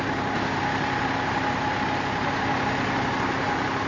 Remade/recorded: recorded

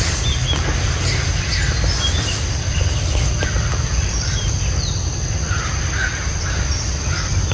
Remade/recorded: remade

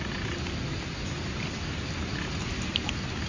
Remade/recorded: recorded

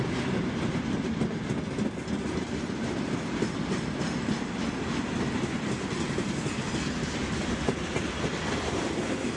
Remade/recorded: recorded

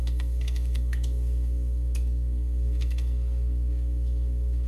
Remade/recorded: remade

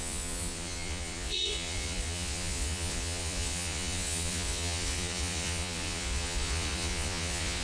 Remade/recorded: remade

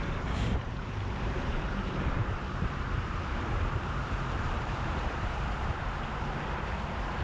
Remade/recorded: remade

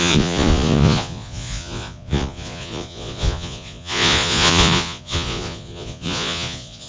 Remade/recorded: remade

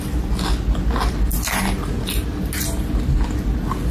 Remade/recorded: recorded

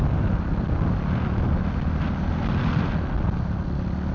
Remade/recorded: recorded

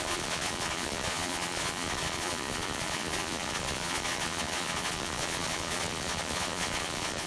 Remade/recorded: remade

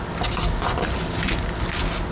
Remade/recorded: recorded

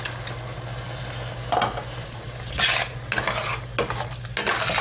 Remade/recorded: recorded